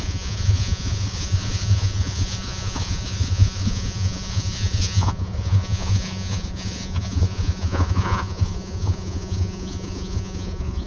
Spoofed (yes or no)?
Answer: yes